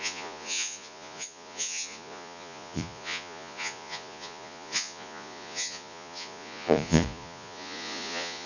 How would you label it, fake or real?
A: fake